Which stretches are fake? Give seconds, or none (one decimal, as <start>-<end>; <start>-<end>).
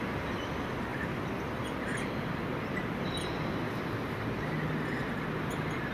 0.9-4.4